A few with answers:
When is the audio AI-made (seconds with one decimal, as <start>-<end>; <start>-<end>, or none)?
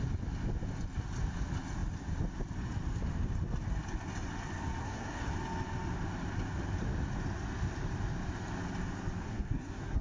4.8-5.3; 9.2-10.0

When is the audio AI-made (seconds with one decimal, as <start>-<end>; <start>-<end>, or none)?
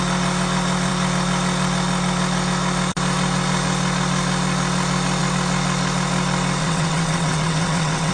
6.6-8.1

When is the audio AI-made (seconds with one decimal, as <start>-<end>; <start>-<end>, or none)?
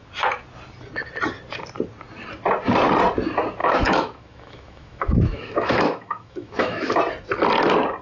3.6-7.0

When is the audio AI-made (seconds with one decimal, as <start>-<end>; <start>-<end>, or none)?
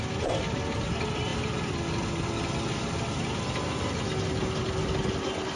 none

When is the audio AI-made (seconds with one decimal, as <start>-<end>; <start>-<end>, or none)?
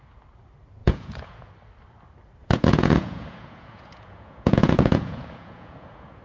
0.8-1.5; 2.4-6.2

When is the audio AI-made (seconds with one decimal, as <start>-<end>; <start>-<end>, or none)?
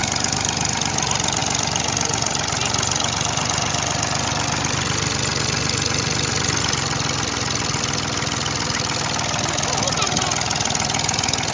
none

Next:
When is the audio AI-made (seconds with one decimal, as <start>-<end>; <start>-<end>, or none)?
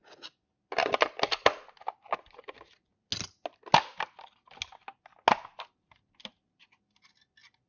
none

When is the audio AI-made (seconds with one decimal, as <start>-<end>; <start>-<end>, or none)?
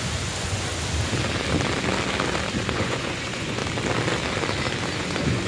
0.0-0.7; 2.6-3.6; 5.0-5.5